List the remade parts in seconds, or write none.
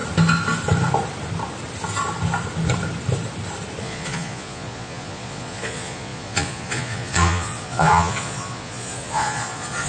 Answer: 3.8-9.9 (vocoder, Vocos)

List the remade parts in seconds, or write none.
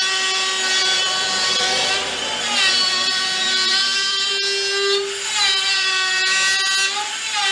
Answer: 0.8-4.3 (vocoder, BigVGAN v2)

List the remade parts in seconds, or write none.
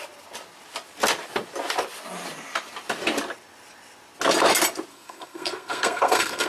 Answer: 4.9-6.5 (codec, SNAC)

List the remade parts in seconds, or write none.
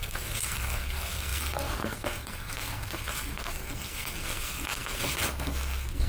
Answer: 0.0-6.1 (codec, SNAC)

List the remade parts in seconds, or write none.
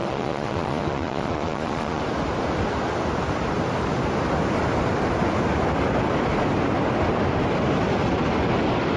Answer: 0.0-2.0 (vocoder, Vocos)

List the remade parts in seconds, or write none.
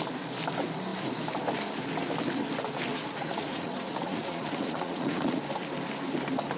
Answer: 2.9-5.4 (vocoder, Vocos)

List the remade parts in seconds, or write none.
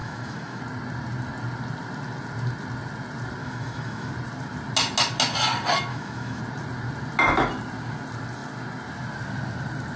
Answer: 0.0-0.6 (autoencoder, DAC-VAE); 3.4-4.1; 5.9-6.4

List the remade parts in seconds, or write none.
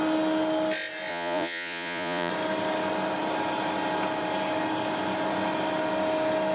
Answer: 1.1-2.3 (vocoder, Vocos)